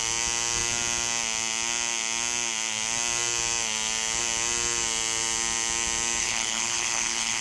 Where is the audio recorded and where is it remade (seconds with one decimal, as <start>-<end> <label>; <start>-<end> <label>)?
0.0-6.2 recorded; 6.2-7.4 remade